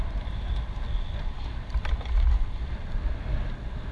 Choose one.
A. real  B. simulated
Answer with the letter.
A